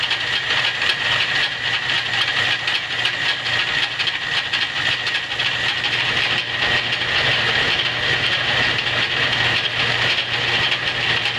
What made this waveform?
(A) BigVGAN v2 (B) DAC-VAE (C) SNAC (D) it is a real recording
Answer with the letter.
D